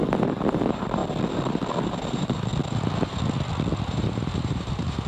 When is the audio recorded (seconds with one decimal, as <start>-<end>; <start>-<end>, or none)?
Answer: 1.0-1.8; 2.5-3.8